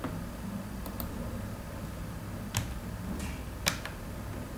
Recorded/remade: recorded